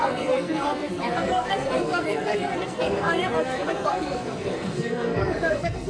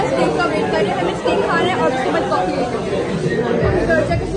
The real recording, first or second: second